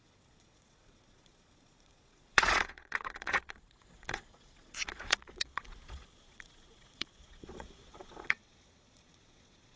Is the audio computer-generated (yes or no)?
yes